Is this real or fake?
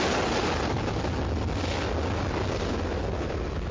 real